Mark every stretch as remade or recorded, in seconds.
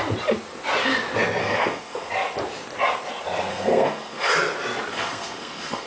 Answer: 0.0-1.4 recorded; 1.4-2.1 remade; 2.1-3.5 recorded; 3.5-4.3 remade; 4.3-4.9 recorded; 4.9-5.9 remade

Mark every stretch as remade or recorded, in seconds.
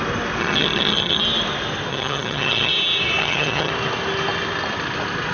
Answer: 0.0-0.4 recorded; 0.4-1.2 remade; 1.2-1.9 recorded; 1.9-2.7 remade; 2.7-3.2 recorded; 3.2-3.7 remade; 3.7-5.3 recorded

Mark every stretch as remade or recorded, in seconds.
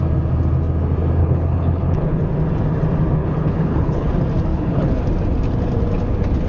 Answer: 0.0-1.2 recorded; 1.2-2.2 remade; 2.2-3.2 recorded; 3.2-4.1 remade; 4.1-4.5 recorded; 4.5-5.0 remade; 5.0-6.5 recorded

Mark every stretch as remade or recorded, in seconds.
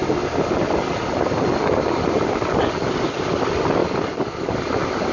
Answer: 0.0-3.8 recorded; 3.8-4.5 remade; 4.5-5.1 recorded